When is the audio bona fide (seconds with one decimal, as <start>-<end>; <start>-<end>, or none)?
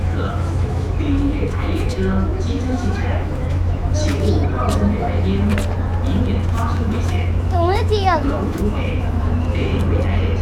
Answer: 4.4-5.0; 5.5-6.6; 9.7-10.4